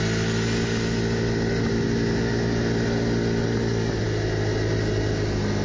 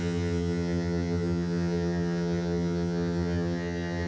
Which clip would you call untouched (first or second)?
first